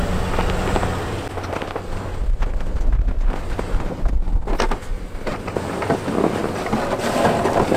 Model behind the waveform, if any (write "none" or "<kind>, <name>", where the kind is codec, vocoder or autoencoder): none